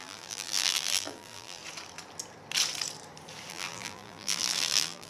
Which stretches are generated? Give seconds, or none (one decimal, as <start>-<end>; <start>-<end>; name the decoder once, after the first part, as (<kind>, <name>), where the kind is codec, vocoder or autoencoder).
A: 0.0-1.6 (vocoder, BigVGAN v2); 3.5-5.1